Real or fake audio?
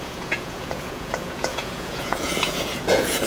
fake